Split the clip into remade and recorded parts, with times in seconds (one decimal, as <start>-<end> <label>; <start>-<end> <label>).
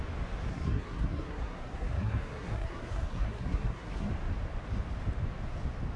0.0-0.5 recorded; 0.5-4.1 remade; 4.1-6.0 recorded